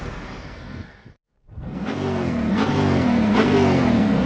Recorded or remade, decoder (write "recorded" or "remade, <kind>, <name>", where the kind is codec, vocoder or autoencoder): remade, codec, SNAC